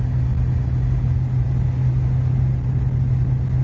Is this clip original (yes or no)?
yes